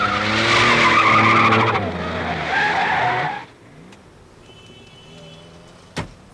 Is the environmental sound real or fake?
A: real